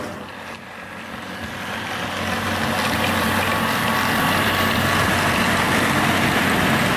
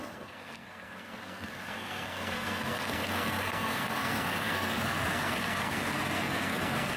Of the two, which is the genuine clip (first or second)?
first